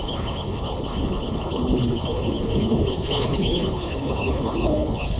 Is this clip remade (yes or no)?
yes